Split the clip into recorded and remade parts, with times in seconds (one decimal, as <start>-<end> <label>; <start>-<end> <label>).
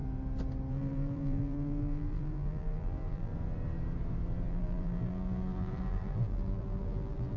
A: 0.0-0.7 recorded; 0.7-3.3 remade; 3.3-4.5 recorded; 4.5-7.4 remade